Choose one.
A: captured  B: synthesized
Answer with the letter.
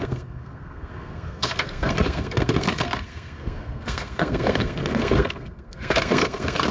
B